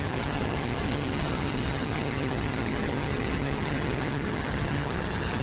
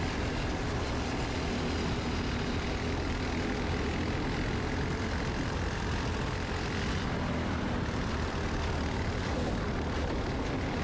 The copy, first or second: first